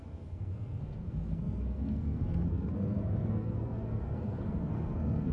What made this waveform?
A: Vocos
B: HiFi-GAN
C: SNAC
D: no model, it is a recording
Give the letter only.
C